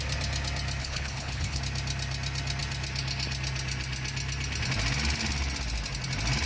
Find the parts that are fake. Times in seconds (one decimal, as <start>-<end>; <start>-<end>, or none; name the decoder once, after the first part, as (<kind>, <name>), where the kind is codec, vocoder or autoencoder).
0.8-1.6 (codec, HILCodec)